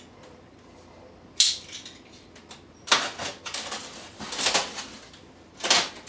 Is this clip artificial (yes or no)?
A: no